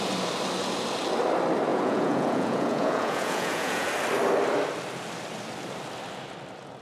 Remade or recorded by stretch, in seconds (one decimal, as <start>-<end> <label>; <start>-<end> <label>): 0.0-1.7 recorded; 1.7-3.9 remade; 3.9-6.8 recorded